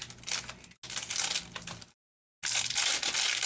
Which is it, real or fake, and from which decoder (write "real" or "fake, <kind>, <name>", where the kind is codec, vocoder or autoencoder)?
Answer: real